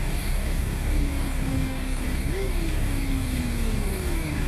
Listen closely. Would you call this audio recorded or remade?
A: remade